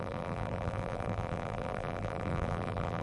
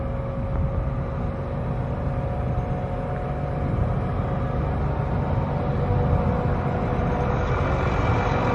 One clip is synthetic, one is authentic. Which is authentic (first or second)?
second